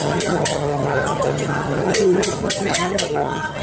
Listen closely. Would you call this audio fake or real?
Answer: fake